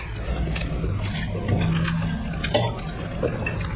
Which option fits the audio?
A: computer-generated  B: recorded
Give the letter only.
B